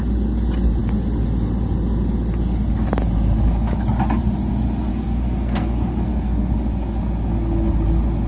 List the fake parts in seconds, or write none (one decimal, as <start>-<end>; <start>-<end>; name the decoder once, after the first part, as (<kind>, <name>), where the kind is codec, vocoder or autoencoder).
4.9-6.5 (codec, SNAC)